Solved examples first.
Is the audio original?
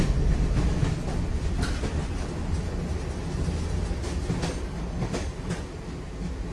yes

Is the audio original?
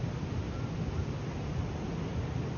yes